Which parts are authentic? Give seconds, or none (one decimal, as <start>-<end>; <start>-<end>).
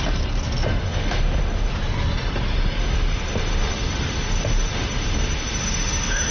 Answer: 0.0-0.8; 1.7-2.8